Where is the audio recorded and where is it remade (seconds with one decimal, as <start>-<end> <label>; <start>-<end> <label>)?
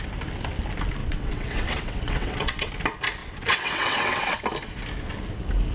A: 0.0-1.0 recorded; 1.0-2.7 remade; 2.7-3.2 recorded; 3.2-4.4 remade; 4.4-5.7 recorded